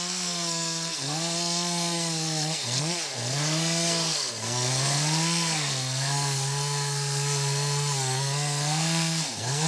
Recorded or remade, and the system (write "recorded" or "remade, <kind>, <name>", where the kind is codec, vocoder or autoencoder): remade, codec, SNAC